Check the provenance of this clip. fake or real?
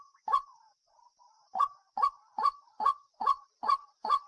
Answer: fake